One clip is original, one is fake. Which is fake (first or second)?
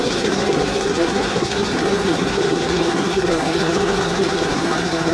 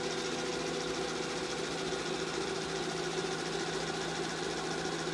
first